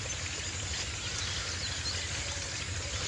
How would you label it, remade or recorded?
recorded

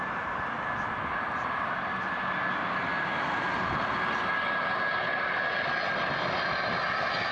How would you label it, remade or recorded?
recorded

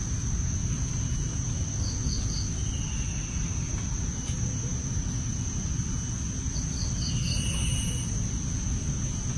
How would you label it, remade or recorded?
recorded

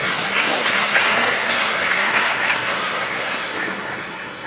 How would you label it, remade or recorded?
remade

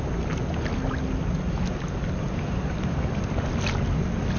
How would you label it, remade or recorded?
recorded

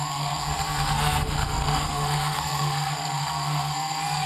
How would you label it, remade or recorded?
remade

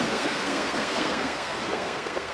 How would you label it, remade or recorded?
remade